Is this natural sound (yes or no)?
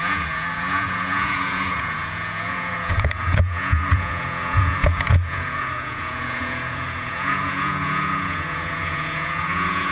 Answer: no